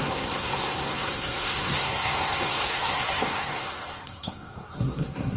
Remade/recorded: remade